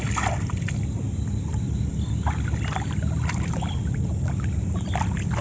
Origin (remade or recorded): recorded